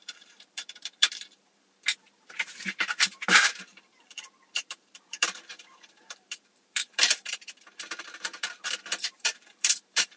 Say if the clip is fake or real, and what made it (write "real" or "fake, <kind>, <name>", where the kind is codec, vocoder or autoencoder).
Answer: fake, vocoder, BigVGAN v2